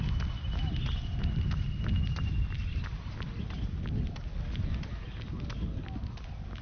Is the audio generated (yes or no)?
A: no